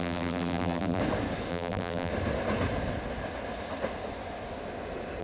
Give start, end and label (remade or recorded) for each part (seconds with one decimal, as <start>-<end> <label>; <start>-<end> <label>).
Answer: 0.0-1.0 remade; 1.0-1.5 recorded; 1.5-2.1 remade; 2.1-5.2 recorded